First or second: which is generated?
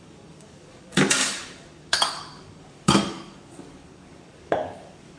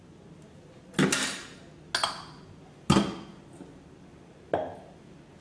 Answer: first